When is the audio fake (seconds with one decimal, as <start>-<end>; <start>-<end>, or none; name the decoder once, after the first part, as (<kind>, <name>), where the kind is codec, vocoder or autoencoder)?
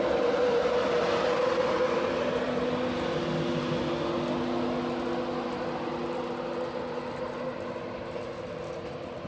none